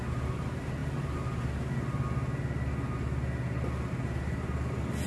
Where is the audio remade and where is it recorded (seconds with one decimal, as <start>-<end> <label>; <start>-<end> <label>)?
0.0-5.1 recorded